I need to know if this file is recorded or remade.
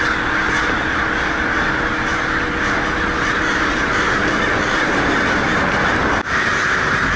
recorded